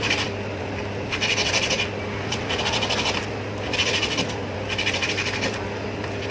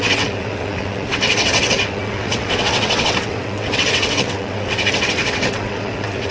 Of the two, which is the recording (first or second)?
first